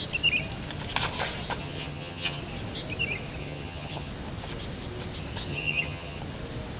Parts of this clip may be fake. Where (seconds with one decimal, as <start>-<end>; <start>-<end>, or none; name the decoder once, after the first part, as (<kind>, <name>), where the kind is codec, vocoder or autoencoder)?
1.6-2.4 (vocoder, HiFi-GAN); 3.4-4.1; 5.5-6.2